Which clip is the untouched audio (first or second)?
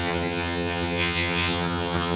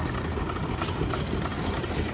second